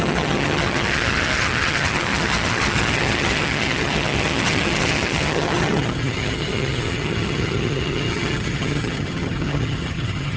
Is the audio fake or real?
fake